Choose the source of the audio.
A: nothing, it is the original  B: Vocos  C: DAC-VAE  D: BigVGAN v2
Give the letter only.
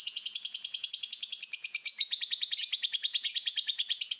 B